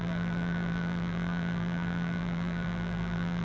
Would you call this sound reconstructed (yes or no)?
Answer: yes